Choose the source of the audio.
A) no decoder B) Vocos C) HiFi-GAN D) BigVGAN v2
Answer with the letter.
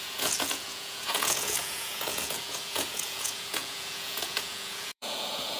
B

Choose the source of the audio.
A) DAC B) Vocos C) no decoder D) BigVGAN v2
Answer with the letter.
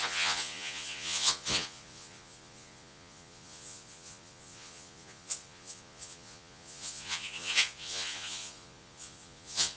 B